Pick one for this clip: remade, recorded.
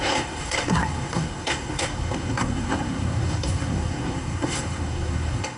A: remade